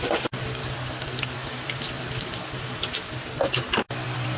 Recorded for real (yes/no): yes